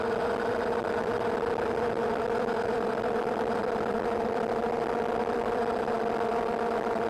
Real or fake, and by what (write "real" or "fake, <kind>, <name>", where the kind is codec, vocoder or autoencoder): fake, vocoder, BigVGAN v2